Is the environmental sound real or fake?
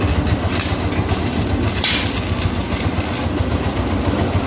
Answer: real